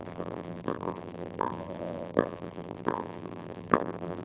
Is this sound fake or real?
fake